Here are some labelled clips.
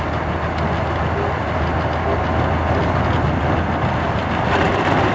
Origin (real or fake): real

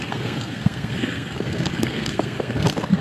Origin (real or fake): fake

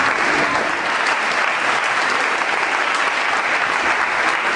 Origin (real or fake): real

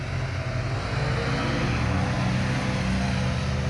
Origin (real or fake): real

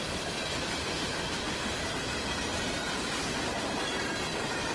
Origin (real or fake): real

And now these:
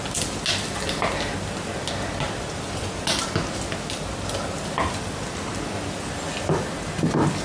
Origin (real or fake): real